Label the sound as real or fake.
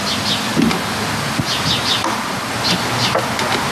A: real